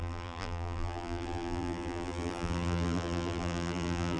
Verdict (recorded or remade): remade